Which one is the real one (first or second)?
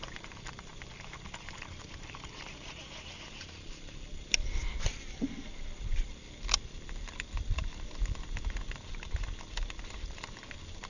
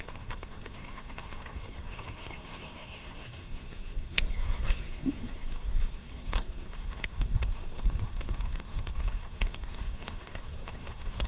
first